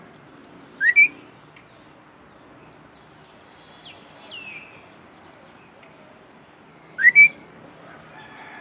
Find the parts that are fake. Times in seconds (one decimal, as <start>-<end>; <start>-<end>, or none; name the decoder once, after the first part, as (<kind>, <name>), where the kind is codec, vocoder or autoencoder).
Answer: 6.7-7.5 (codec, DAC)